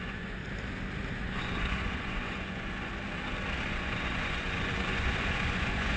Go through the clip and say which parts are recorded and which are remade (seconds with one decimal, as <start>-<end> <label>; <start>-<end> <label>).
0.0-0.4 remade; 0.4-1.1 recorded; 1.1-2.9 remade; 2.9-3.6 recorded; 3.6-6.0 remade